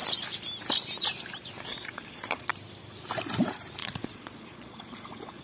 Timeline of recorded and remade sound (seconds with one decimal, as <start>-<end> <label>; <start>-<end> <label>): 0.0-1.7 recorded; 1.7-2.5 remade; 2.5-3.8 recorded; 3.8-5.4 remade

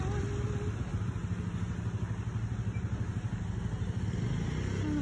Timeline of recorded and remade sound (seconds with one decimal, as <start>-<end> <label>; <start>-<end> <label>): 0.0-5.0 recorded

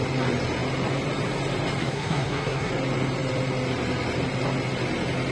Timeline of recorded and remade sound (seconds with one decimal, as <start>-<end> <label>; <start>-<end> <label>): 0.0-1.8 recorded; 1.8-2.7 remade; 2.7-5.3 recorded

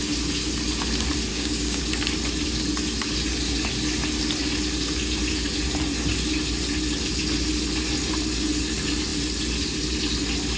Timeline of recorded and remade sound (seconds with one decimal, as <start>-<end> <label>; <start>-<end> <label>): 0.0-1.3 recorded; 1.3-1.8 remade; 1.8-10.6 recorded

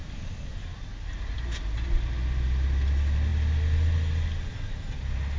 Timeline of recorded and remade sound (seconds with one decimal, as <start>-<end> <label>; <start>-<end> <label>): 0.0-5.4 recorded

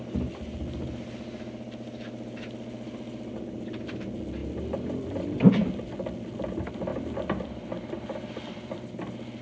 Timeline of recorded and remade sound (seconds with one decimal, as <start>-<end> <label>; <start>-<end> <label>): 0.0-4.4 recorded; 4.4-5.7 remade; 5.7-6.9 recorded; 6.9-8.9 remade; 8.9-9.4 recorded